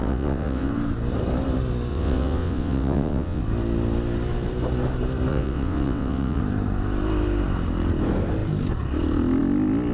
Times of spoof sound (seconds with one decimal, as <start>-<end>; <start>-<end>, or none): 0.0-0.7; 1.9-3.4; 5.3-6.4